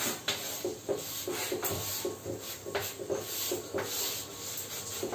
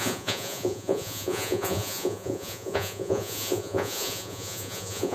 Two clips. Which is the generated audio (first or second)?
second